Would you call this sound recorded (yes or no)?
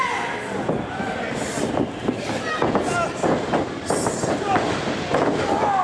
yes